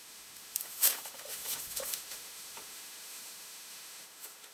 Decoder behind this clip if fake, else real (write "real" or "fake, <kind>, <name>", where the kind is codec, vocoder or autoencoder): fake, autoencoder, DAC-VAE